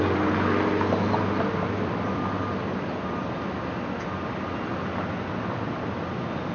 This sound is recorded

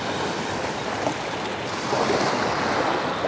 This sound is recorded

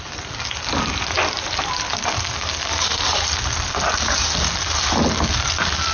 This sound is recorded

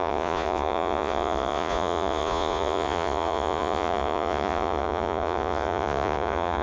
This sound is remade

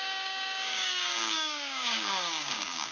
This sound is remade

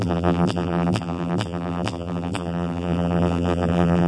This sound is remade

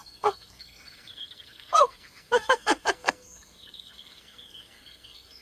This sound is remade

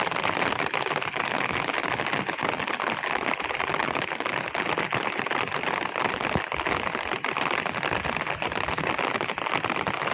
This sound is recorded